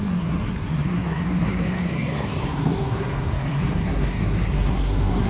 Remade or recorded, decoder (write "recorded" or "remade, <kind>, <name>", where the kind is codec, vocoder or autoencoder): remade, codec, SNAC